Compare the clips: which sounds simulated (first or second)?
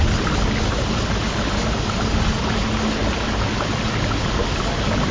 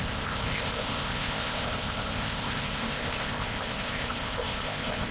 second